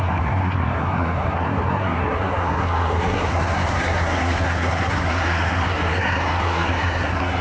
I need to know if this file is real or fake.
fake